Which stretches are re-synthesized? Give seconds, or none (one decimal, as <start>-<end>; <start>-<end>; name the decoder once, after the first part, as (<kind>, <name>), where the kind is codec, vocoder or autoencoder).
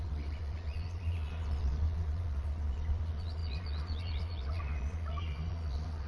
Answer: 0.0-6.1 (vocoder, Vocos)